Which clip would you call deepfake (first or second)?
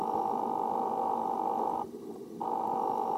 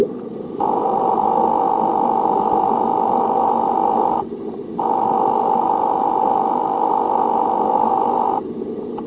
second